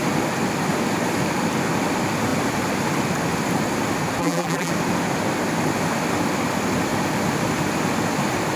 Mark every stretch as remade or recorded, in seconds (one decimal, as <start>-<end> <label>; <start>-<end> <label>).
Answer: 0.0-4.2 recorded; 4.2-4.7 remade; 4.7-8.6 recorded